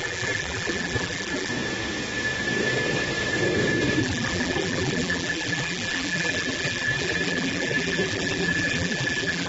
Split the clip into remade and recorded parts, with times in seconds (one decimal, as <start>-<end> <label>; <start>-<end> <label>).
0.0-1.5 remade; 1.5-4.0 recorded; 4.0-9.5 remade